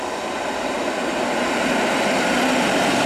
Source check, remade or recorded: recorded